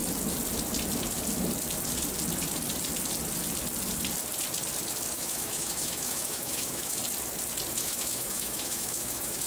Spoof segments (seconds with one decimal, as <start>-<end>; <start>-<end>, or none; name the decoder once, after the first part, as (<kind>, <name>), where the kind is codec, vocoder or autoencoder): 5.1-7.0 (autoencoder, DAC-VAE); 7.7-9.5